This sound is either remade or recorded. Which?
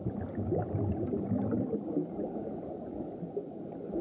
recorded